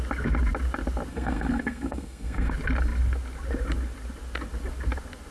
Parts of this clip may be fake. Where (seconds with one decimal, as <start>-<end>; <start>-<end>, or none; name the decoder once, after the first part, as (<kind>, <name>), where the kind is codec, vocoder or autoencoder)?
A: 1.1-2.5 (codec, SNAC)